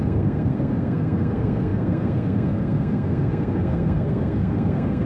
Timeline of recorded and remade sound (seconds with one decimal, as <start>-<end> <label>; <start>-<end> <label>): 0.0-5.1 remade